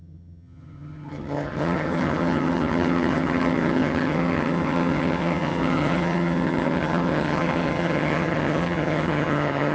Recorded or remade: remade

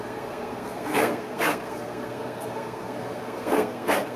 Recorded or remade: remade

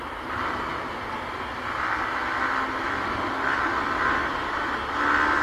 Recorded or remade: recorded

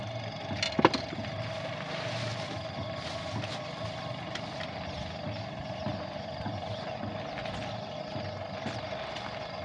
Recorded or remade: recorded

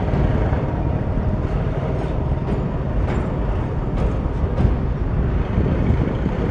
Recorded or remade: recorded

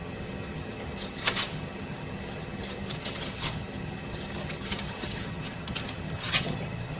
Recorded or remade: remade